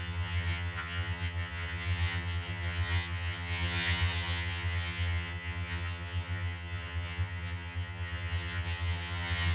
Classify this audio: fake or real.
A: fake